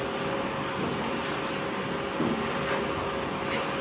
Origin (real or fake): real